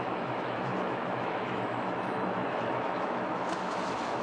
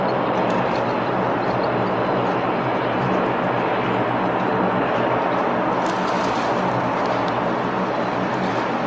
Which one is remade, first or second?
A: first